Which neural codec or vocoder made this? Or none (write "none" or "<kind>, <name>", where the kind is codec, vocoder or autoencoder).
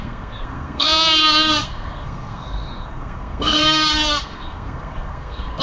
codec, SNAC